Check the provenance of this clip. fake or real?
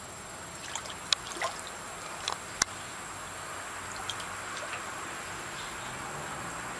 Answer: real